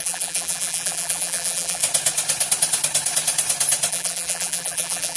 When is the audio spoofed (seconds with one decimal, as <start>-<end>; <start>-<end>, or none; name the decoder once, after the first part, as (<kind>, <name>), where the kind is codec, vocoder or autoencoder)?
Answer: 0.0-1.8 (vocoder, BigVGAN v2); 3.9-5.2